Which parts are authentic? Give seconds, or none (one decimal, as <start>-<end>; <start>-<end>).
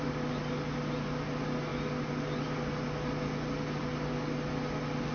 0.0-5.1